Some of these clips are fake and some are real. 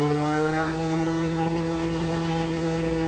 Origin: fake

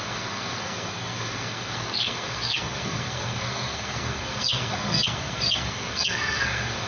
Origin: fake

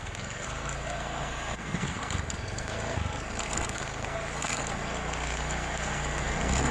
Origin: fake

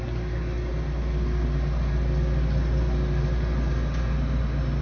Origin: real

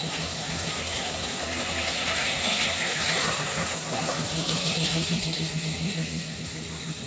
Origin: fake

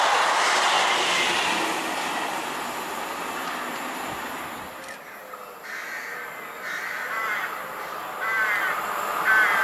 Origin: real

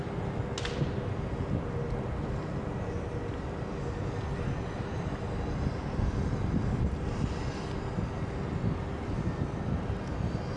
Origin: real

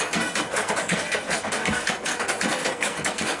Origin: fake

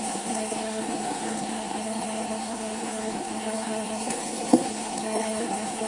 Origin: fake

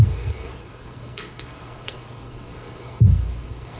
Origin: fake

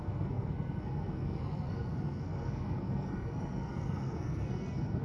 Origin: fake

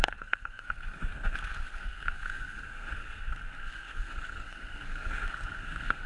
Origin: fake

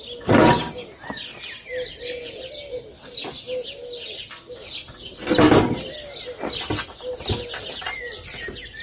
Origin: real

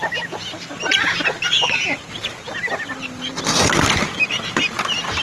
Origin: real